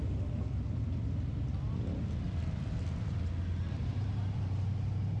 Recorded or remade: recorded